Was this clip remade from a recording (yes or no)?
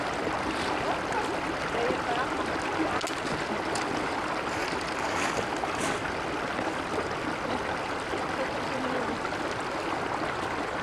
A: no